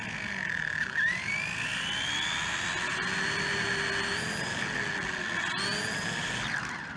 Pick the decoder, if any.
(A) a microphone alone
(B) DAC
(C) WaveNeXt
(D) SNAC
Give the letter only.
A